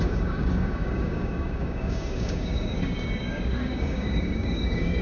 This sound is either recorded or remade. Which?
remade